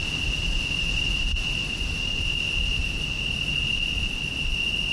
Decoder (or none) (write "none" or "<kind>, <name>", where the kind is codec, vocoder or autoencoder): none